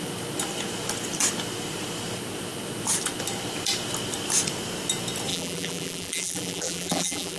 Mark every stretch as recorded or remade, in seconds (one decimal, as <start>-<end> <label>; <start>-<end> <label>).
0.0-5.3 recorded; 5.3-7.4 remade